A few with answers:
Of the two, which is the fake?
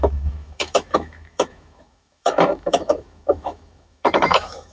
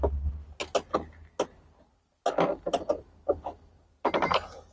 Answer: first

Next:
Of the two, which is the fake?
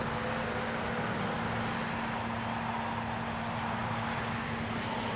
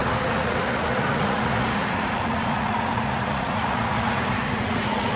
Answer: second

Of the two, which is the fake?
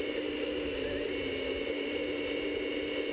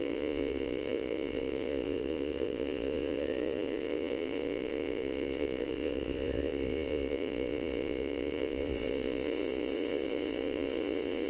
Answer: second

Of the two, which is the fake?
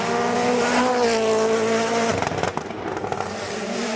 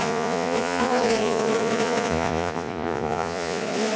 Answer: second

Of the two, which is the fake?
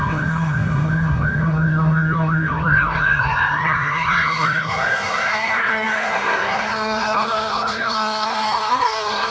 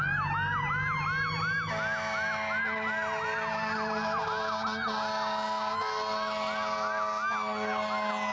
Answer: first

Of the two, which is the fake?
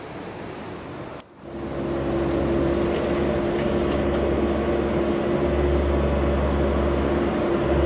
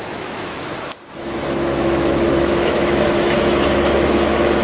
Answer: second